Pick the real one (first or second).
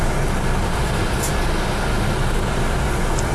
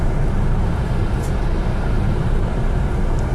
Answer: first